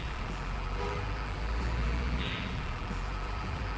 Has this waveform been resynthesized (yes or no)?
yes